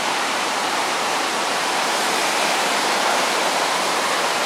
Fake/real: fake